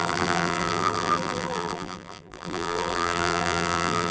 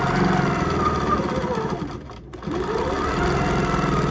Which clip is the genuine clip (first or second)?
second